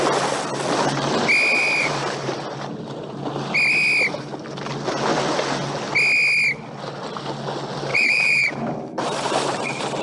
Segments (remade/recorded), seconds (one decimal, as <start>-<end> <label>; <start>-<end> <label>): 0.0-1.8 recorded; 1.8-2.4 remade; 2.4-7.9 recorded; 7.9-10.0 remade